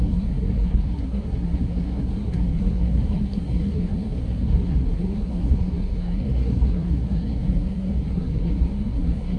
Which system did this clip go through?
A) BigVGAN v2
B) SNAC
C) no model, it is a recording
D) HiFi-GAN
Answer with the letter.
B